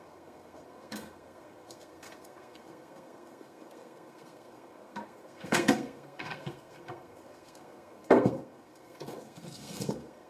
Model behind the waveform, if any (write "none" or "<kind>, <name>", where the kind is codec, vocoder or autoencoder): codec, SNAC